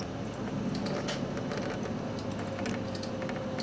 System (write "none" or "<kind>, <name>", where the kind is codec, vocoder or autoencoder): none